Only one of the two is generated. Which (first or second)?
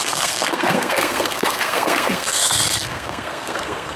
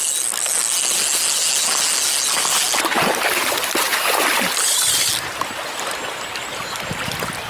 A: first